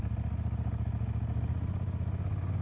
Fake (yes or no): no